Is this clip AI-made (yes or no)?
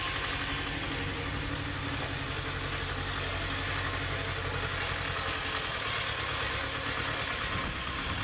no